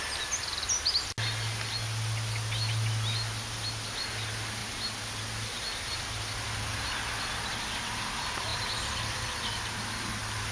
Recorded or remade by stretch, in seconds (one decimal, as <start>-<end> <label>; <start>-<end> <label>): 0.0-10.5 recorded